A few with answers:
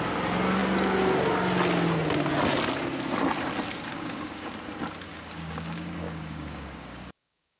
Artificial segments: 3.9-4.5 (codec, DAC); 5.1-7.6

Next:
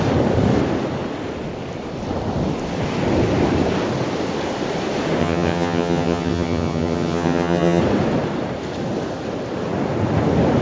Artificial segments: 5.2-7.8 (vocoder, HiFi-GAN)

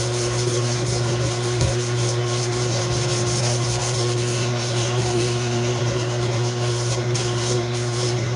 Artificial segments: 0.0-2.8 (codec, SNAC); 3.4-8.4

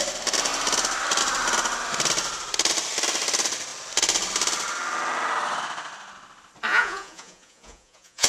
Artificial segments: 6.7-8.3 (vocoder, Vocos)

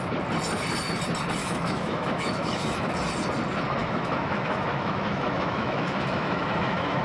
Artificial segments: 1.4-2.9 (autoencoder, DAC-VAE); 3.8-7.0

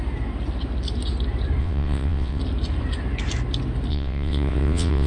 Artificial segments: 1.6-2.4 (vocoder, WaveNeXt); 3.9-5.1

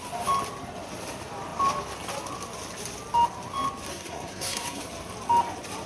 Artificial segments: 3.9-4.8 (codec, SNAC)

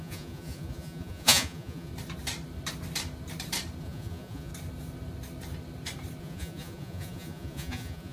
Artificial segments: 0.0-1.9 (vocoder, Vocos); 3.8-4.5; 6.2-8.1